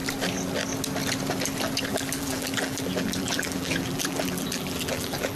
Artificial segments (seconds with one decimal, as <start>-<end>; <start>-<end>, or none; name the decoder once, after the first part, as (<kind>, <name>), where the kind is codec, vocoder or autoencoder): 1.9-5.4 (vocoder, BigVGAN v2)